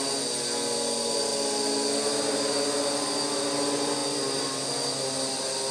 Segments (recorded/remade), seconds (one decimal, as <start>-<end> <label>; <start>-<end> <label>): 0.0-5.7 recorded